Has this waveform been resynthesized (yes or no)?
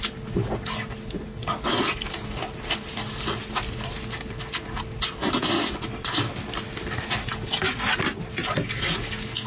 no